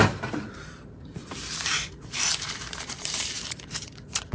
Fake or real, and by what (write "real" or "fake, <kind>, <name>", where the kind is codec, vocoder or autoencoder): fake, vocoder, BigVGAN v2